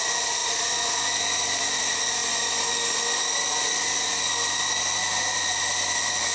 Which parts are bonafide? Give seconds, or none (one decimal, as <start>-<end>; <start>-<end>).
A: 0.0-6.3